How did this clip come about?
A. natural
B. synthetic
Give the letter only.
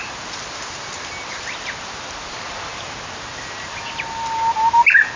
A